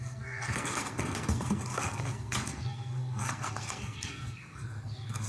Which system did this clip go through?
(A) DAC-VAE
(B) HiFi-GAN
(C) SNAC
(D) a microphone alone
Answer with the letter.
C